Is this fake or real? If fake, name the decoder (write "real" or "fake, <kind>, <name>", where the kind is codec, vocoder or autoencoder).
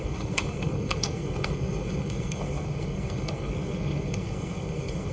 fake, codec, SNAC